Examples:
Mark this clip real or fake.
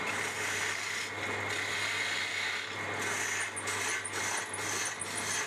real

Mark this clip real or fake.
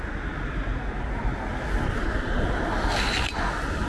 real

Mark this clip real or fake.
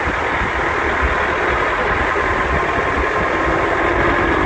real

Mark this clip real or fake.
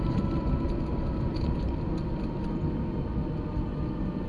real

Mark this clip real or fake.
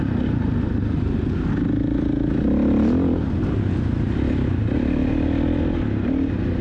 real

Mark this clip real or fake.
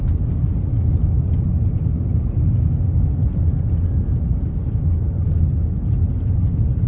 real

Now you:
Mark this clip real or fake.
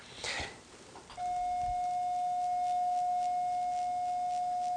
real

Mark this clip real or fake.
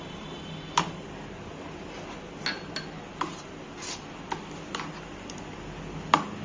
real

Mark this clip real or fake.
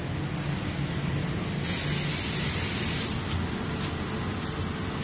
real